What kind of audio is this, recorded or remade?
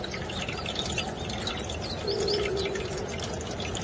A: recorded